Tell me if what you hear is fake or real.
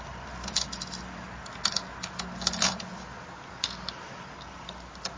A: real